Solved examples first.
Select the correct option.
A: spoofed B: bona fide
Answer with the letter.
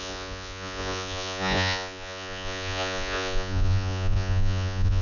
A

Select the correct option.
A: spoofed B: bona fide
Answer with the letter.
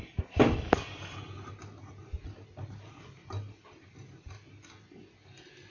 B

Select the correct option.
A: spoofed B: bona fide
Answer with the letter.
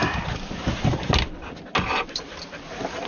B